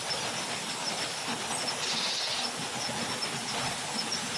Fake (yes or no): no